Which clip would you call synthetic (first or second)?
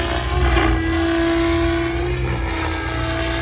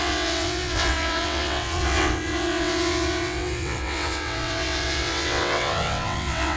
second